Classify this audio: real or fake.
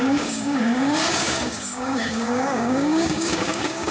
fake